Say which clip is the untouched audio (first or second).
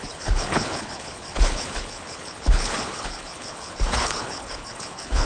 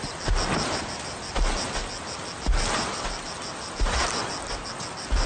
second